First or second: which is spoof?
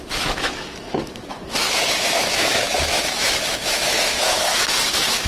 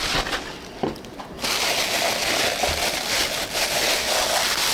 first